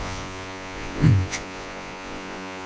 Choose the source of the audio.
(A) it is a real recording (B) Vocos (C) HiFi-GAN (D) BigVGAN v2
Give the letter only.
B